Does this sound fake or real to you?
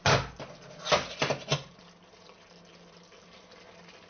real